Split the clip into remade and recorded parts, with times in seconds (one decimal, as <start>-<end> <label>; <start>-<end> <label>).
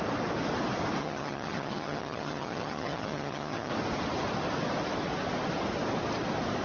0.0-1.0 recorded; 1.0-3.7 remade; 3.7-6.6 recorded